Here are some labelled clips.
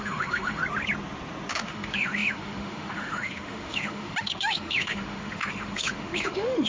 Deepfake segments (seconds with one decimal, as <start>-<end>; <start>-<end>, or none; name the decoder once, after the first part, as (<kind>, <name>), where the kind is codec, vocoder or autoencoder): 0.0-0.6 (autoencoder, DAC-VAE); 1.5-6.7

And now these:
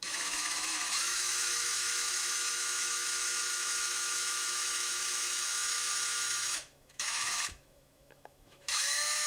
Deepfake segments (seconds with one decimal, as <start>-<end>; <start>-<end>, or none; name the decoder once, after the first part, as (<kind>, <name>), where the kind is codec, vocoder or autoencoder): 0.0-9.3 (autoencoder, DAC-VAE)

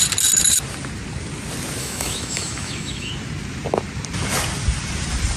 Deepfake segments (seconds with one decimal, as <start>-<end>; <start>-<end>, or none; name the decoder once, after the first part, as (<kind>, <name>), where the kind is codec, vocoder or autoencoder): 1.8-3.1 (autoencoder, DAC-VAE)

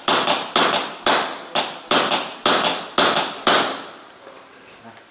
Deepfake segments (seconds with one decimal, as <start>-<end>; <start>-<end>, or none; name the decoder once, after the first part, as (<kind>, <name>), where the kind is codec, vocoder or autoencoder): none